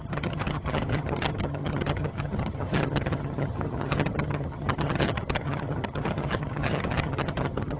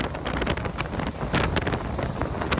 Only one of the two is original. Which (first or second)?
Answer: second